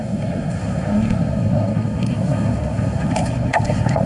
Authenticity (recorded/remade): remade